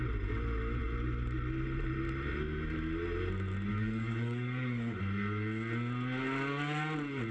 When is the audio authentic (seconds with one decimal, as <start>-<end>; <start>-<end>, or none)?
0.0-3.7; 5.0-7.3